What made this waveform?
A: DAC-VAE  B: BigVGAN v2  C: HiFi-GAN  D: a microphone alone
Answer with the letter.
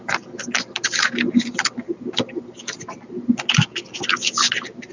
D